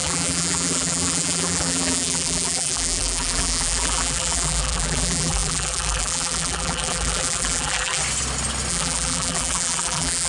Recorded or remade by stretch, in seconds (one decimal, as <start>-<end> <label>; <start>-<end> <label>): 0.0-8.0 remade; 8.0-8.7 recorded; 8.7-10.3 remade